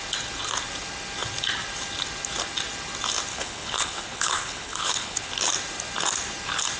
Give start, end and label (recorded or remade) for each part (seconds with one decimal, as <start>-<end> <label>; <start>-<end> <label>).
0.0-3.3 recorded; 3.3-5.3 remade; 5.3-6.8 recorded

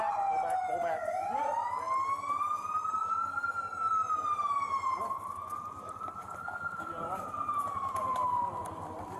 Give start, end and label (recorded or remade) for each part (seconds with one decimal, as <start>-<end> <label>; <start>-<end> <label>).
0.0-9.2 recorded

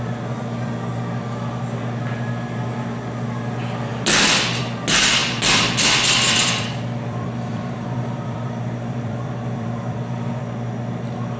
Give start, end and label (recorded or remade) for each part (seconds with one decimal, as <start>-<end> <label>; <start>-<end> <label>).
0.0-5.2 recorded; 5.2-10.3 remade; 10.3-11.4 recorded